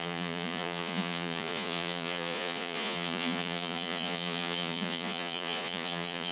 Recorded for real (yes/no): no